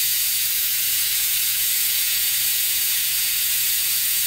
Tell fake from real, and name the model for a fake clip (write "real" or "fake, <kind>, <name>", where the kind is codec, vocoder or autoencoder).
fake, vocoder, Vocos